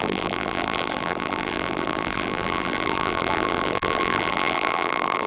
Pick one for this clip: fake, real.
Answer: fake